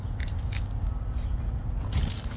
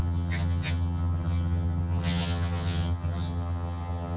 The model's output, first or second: second